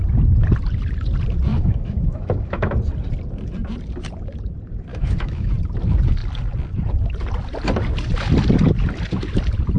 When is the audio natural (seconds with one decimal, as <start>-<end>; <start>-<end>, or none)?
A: 0.0-1.5; 2.7-4.9; 5.5-9.8